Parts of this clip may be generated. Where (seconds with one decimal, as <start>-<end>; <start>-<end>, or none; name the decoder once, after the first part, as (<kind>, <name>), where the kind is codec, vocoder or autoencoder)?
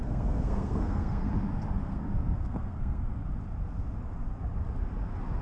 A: 0.0-1.3 (codec, SNAC); 1.8-3.0